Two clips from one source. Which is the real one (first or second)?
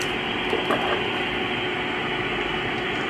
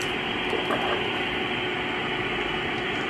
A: first